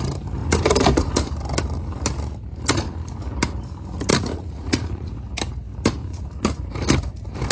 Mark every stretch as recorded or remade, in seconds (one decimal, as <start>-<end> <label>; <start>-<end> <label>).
0.0-4.1 recorded; 4.1-5.1 remade; 5.1-6.0 recorded; 6.0-6.6 remade; 6.6-7.5 recorded